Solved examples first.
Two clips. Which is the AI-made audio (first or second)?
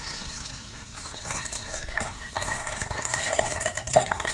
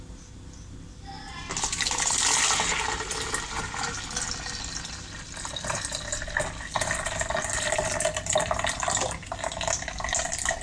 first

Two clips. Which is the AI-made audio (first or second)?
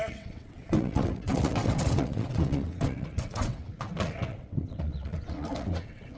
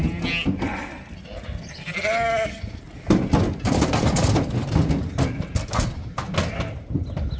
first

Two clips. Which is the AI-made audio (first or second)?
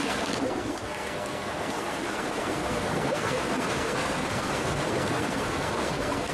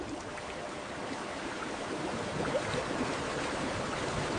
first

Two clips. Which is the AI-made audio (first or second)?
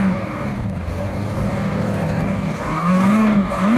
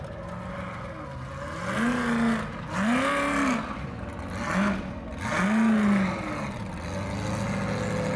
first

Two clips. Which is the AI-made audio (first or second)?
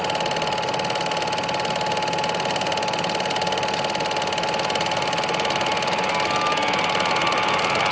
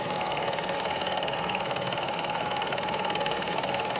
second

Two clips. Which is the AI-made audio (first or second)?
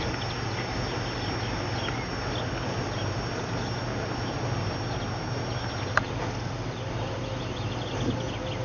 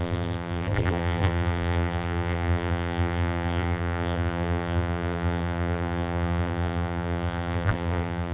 second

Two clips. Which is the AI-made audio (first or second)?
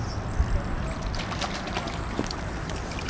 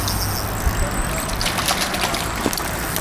first